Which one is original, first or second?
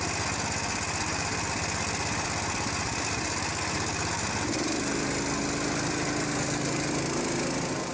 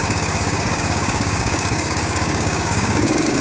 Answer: first